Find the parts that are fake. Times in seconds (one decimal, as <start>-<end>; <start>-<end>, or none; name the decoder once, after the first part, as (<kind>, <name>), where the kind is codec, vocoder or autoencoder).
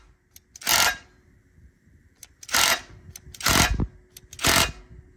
0.7-3.8 (vocoder, BigVGAN v2)